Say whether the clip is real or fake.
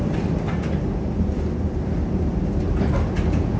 real